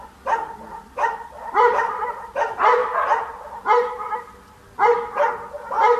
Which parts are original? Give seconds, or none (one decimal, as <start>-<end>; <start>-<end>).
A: 0.0-6.0